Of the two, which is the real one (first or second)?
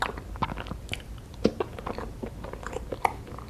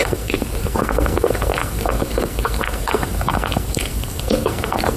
first